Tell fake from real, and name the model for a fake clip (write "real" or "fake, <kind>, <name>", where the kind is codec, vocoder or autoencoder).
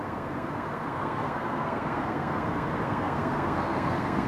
fake, codec, SNAC